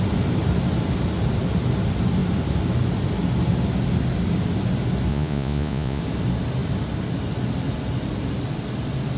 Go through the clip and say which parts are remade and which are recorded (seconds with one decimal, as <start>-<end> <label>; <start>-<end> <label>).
0.0-5.1 recorded; 5.1-6.0 remade; 6.0-9.2 recorded